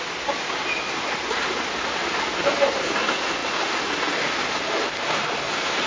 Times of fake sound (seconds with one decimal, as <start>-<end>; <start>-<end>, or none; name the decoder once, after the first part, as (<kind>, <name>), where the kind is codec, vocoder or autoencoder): none